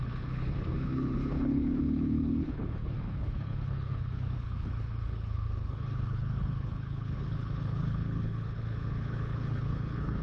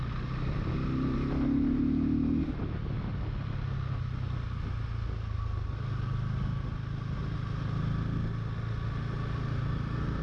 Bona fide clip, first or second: second